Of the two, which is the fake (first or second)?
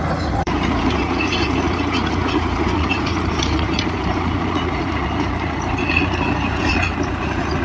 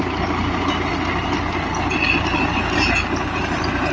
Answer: first